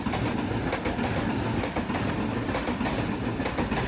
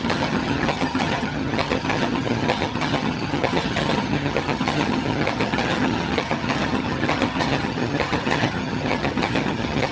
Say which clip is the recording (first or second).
first